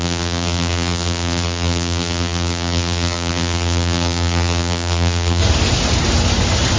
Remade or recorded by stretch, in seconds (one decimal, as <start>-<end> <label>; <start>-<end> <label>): 0.0-5.4 remade; 5.4-6.8 recorded